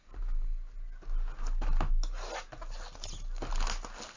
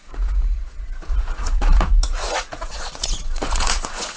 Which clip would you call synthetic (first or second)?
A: second